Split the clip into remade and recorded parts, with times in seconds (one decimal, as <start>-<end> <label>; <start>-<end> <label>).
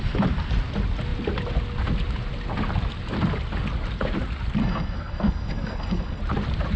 0.0-4.6 recorded; 4.6-6.2 remade; 6.2-6.8 recorded